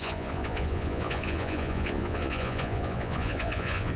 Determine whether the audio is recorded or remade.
remade